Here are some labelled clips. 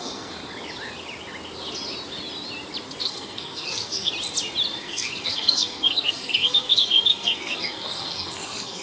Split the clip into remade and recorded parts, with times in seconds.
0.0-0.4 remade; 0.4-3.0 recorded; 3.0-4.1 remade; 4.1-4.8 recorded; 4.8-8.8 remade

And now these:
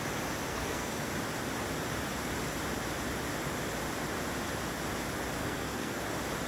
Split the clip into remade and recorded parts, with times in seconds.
0.0-0.5 recorded; 0.5-1.1 remade; 1.1-5.4 recorded; 5.4-6.0 remade; 6.0-6.5 recorded

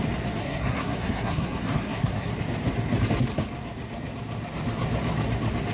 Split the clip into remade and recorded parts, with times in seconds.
0.0-0.4 recorded; 0.4-2.3 remade; 2.3-5.7 recorded

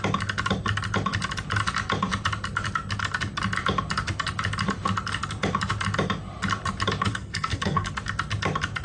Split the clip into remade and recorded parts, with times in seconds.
0.0-7.1 recorded; 7.1-7.9 remade; 7.9-8.8 recorded

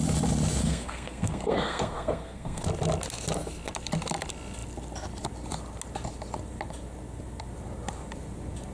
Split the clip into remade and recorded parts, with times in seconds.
0.0-0.6 recorded; 0.6-2.6 remade; 2.6-8.7 recorded